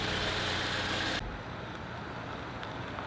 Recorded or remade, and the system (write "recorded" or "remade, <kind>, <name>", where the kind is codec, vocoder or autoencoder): recorded